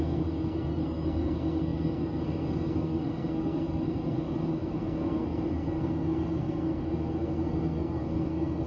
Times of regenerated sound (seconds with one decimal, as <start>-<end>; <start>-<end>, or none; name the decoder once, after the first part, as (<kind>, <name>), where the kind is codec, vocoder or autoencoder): 0.0-8.7 (codec, SNAC)

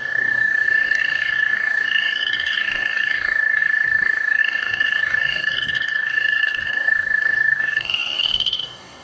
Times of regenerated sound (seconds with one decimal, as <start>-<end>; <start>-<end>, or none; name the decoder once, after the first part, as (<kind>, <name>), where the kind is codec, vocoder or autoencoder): 0.0-9.0 (codec, DAC)